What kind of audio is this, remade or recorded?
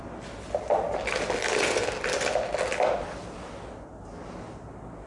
recorded